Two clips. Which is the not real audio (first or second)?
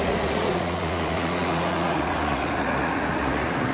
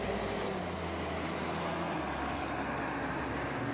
first